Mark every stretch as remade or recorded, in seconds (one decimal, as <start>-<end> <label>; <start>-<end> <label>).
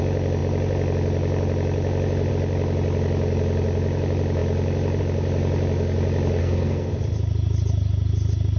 0.0-6.4 recorded; 6.4-6.9 remade; 6.9-8.6 recorded